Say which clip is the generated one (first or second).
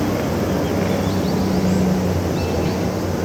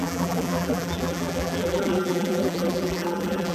second